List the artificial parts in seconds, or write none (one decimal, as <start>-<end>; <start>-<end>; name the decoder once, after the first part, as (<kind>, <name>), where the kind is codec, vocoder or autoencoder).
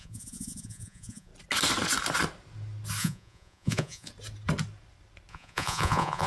0.0-1.3 (vocoder, Vocos); 3.0-4.1; 5.3-6.3